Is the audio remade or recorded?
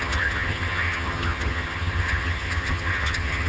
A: remade